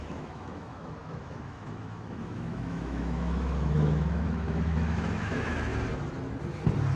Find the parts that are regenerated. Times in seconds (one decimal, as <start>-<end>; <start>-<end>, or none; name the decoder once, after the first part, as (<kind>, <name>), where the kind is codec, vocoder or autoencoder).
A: 0.0-5.7 (autoencoder, DAC-VAE)

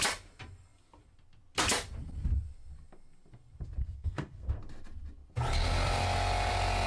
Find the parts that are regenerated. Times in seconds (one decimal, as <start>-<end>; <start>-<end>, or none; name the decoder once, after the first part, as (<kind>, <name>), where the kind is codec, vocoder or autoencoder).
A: 3.8-4.6 (codec, SNAC)

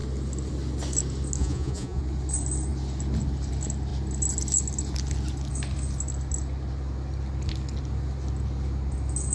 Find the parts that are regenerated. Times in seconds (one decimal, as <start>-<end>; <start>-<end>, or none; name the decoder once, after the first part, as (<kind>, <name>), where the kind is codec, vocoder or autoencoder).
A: 1.4-2.0 (vocoder, Vocos)